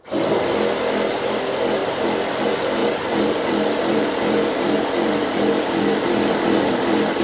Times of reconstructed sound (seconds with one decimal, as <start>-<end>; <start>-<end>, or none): 2.8-7.2